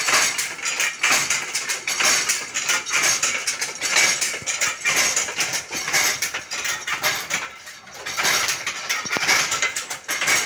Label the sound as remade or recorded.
remade